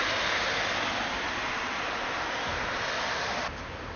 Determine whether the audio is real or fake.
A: real